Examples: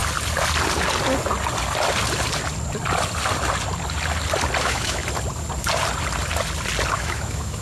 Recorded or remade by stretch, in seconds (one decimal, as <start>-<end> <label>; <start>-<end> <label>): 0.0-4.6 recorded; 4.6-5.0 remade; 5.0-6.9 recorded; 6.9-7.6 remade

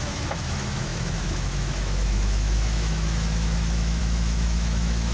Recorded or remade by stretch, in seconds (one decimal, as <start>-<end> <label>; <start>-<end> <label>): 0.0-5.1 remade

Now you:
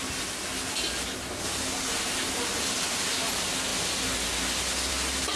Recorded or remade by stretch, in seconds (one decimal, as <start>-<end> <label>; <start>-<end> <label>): 0.0-5.4 recorded

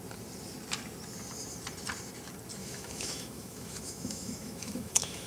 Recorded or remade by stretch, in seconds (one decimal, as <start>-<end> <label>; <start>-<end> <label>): 0.0-2.6 recorded; 2.6-5.3 remade

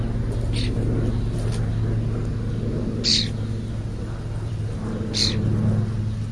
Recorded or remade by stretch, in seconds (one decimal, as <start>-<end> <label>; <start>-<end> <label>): 0.0-6.3 recorded